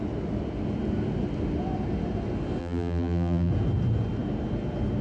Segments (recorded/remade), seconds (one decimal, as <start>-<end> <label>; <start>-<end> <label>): 0.0-2.6 recorded; 2.6-3.5 remade; 3.5-5.0 recorded